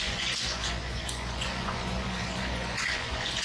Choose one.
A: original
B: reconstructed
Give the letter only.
B